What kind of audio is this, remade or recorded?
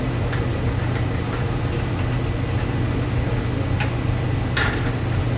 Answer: recorded